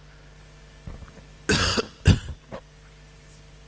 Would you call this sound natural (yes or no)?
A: yes